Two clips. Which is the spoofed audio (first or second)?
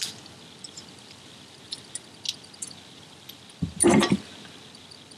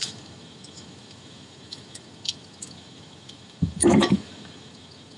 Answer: second